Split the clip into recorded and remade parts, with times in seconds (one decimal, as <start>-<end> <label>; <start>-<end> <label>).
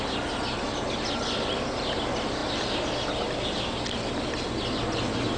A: 0.0-5.4 recorded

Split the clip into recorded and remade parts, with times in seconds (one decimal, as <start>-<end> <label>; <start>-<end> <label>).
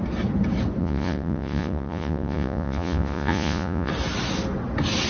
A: 0.0-0.8 recorded; 0.8-3.9 remade; 3.9-5.1 recorded